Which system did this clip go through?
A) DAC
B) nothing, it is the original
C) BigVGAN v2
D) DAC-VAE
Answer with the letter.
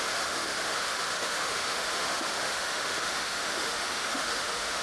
D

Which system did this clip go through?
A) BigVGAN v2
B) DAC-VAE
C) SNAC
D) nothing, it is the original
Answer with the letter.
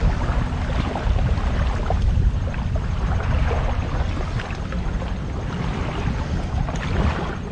D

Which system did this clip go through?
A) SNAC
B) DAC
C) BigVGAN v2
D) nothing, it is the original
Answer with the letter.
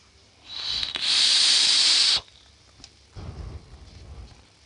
D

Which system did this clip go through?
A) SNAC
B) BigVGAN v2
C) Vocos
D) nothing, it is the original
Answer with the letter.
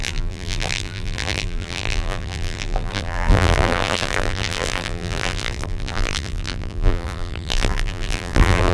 B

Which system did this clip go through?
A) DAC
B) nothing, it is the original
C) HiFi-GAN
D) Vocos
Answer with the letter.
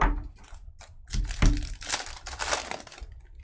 B